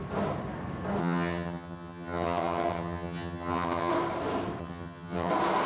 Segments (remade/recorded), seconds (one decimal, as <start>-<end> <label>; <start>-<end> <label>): 0.0-1.0 recorded; 1.0-3.9 remade; 3.9-4.6 recorded; 4.6-5.3 remade; 5.3-5.7 recorded